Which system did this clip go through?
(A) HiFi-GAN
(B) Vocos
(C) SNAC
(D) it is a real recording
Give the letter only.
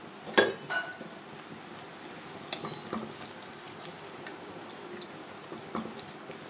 D